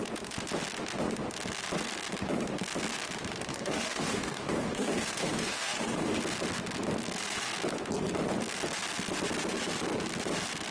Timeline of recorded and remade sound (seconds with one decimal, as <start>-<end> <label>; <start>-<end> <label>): 0.0-3.5 recorded; 3.5-6.2 remade; 6.2-10.7 recorded